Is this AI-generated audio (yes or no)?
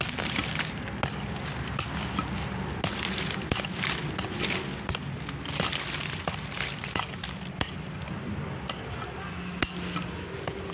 no